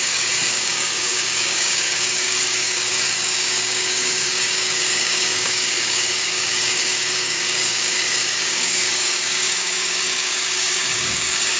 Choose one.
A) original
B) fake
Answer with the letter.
B